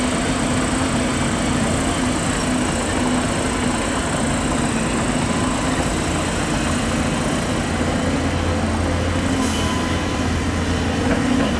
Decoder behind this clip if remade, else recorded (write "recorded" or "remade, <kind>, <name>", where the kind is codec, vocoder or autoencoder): recorded